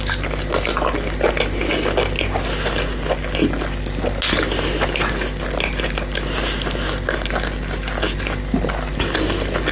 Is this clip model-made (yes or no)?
no